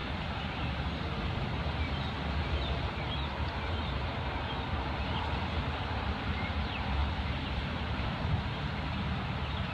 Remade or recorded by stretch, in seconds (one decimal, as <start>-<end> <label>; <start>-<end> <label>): 0.0-7.0 recorded; 7.0-8.8 remade; 8.8-9.7 recorded